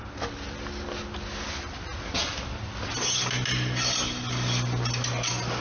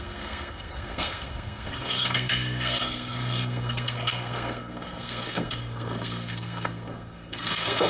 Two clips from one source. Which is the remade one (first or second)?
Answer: second